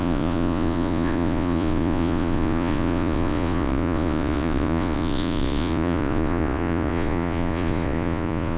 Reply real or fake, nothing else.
fake